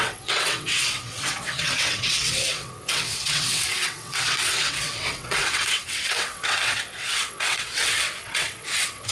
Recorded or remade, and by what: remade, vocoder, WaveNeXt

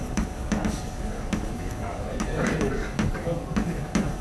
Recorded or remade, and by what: remade, codec, DAC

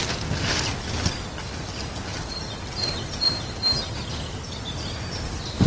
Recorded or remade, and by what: recorded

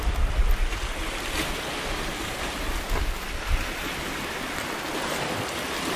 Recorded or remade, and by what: recorded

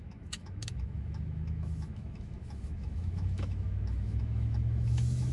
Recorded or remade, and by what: remade, autoencoder, DAC-VAE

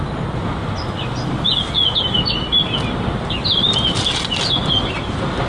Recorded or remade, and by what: recorded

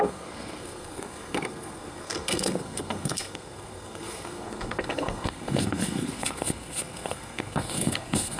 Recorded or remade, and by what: remade, codec, SNAC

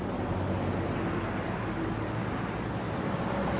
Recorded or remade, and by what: recorded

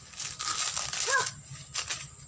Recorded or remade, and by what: recorded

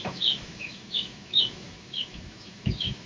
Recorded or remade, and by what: remade, autoencoder, DAC-VAE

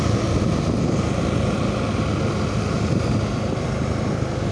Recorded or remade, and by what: recorded